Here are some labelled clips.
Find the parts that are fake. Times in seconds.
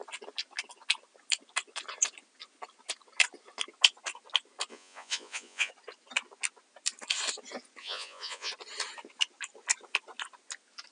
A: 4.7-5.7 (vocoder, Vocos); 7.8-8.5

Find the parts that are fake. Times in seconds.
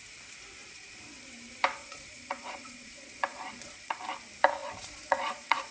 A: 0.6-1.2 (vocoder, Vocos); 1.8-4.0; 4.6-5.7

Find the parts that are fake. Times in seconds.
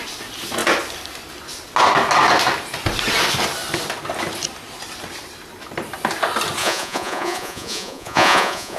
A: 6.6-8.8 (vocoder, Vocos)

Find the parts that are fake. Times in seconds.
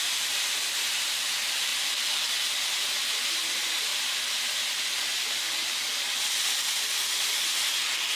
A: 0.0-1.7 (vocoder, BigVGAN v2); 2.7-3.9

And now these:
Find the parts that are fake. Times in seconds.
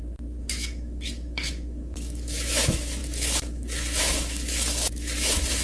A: 0.0-5.6 (autoencoder, DAC-VAE)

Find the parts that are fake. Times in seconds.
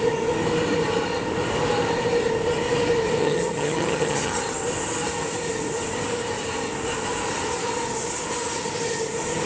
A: 3.2-4.4 (vocoder, HiFi-GAN)